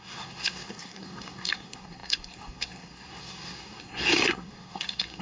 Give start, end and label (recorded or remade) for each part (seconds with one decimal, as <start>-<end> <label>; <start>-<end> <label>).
0.0-5.2 remade